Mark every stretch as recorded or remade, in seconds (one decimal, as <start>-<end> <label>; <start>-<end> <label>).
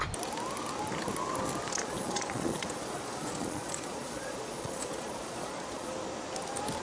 0.0-1.8 recorded; 1.8-5.9 remade; 5.9-6.8 recorded